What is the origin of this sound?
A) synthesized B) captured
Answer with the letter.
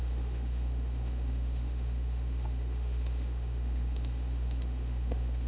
A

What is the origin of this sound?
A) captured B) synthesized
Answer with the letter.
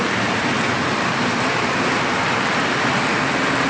A